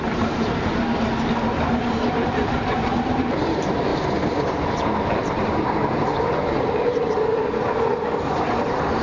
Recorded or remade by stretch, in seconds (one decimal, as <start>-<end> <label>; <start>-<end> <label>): 0.0-0.7 remade; 0.7-1.7 recorded; 1.7-3.9 remade; 3.9-8.2 recorded; 8.2-9.0 remade